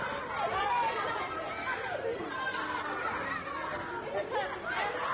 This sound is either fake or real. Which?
real